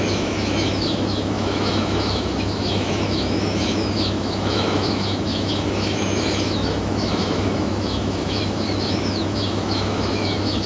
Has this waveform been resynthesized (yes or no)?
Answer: yes